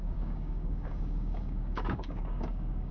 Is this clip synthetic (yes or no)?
yes